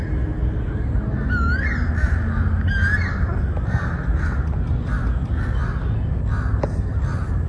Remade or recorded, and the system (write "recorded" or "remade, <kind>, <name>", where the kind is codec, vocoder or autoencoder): recorded